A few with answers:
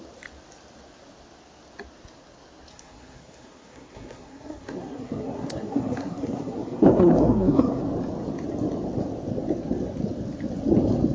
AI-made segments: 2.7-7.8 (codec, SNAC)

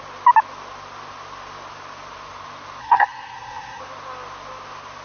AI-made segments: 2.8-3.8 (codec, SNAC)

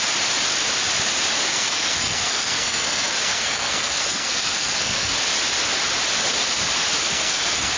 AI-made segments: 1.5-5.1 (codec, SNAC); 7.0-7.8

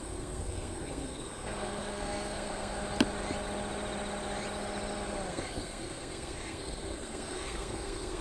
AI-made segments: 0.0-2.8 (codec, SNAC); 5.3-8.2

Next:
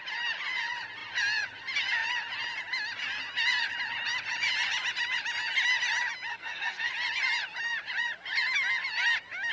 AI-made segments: 6.3-6.9 (codec, SNAC)

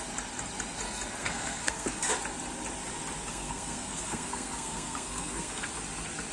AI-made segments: 1.2-2.1 (codec, SNAC); 3.3-5.7

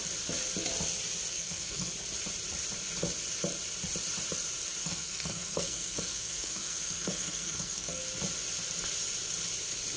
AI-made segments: 1.3-1.9 (codec, SNAC); 4.8-8.0